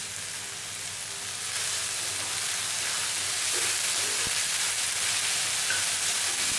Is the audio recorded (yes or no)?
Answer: yes